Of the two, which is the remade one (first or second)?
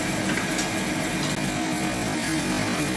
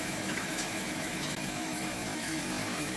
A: second